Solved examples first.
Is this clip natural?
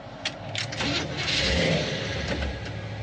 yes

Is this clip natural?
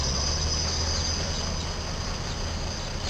yes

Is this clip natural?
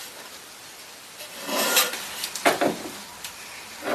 no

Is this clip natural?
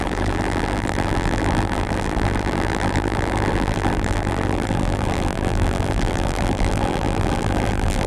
no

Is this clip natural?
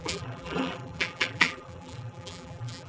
no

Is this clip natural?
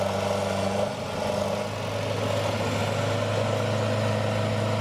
yes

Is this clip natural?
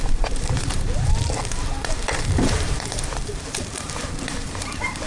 no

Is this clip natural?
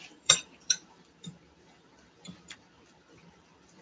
no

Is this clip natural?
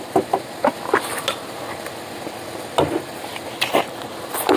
yes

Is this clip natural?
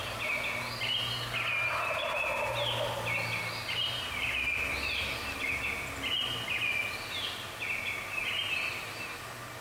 yes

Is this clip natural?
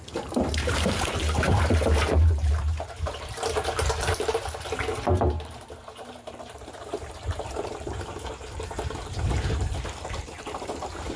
no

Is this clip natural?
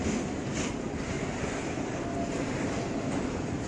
yes